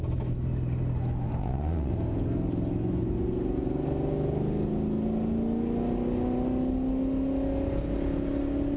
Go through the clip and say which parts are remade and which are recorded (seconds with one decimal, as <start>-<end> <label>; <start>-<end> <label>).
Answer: 0.0-1.4 recorded; 1.4-1.9 remade; 1.9-8.8 recorded